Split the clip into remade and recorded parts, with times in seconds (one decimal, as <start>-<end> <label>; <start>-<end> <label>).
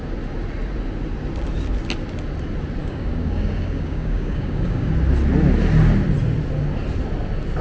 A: 0.0-2.8 recorded; 2.8-4.9 remade; 4.9-7.6 recorded